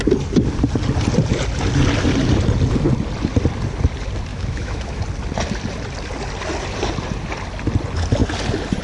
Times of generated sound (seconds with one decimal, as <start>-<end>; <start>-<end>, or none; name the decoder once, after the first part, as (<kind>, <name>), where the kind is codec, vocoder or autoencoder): 4.3-5.0 (autoencoder, DAC-VAE)